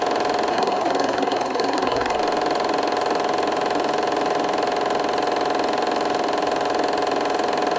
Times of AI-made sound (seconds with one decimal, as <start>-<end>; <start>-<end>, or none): 0.5-2.2